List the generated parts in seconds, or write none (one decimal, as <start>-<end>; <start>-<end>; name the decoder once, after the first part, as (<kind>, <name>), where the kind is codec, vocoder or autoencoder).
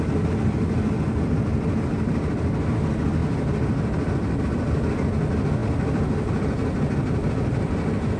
none